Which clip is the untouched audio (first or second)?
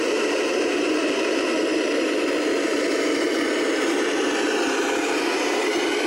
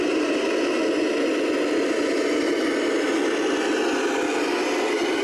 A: second